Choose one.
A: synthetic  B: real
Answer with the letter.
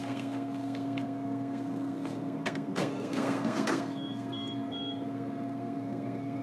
A